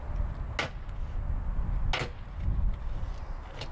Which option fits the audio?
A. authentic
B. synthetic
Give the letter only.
A